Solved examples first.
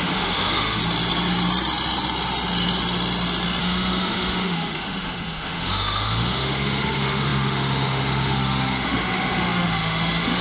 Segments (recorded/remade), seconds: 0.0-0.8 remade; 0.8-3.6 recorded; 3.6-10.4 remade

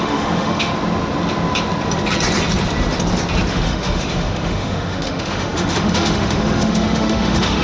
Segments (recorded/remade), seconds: 0.0-0.7 remade; 0.7-3.5 recorded; 3.5-7.6 remade

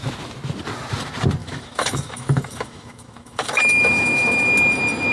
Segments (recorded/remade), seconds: 0.0-1.4 recorded; 1.4-4.5 remade; 4.5-5.1 recorded

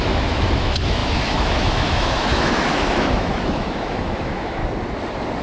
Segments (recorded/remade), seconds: 0.0-4.6 remade; 4.6-5.4 recorded

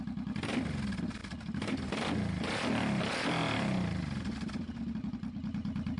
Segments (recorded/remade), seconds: 0.0-6.0 recorded

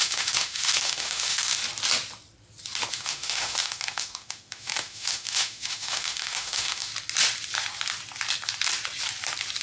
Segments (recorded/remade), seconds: 0.0-1.6 remade; 1.6-2.9 recorded; 2.9-6.9 remade; 6.9-9.6 recorded

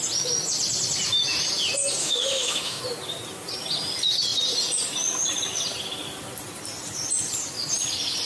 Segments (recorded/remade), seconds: 0.0-2.0 recorded; 2.0-2.8 remade; 2.8-8.3 recorded